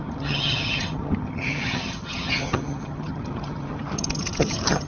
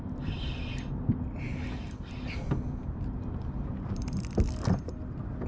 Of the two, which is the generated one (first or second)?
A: first